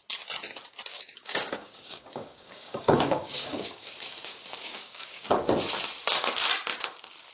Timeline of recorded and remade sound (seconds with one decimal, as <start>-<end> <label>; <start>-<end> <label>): 0.0-0.9 recorded; 0.9-5.3 remade; 5.3-7.3 recorded